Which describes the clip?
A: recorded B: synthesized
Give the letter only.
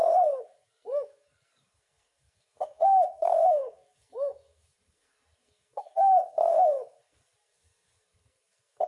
B